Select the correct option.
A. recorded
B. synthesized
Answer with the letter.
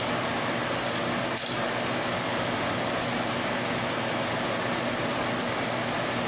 A